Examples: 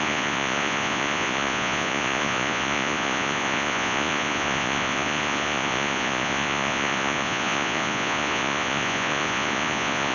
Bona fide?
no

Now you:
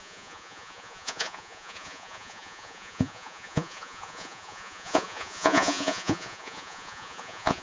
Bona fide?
no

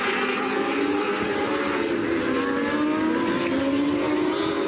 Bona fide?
yes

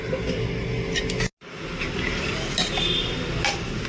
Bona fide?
yes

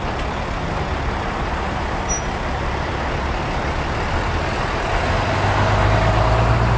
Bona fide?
yes